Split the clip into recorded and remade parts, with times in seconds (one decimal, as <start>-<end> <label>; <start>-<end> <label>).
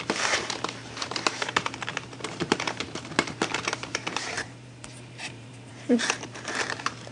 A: 0.0-7.1 remade